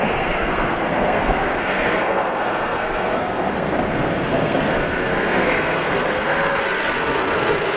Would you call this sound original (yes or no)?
no